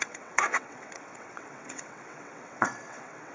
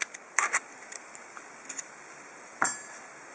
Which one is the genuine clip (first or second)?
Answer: second